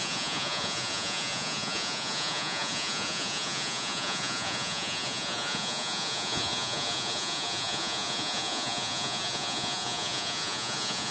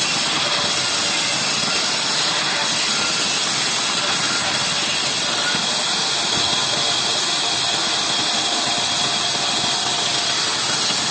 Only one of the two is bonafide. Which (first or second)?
second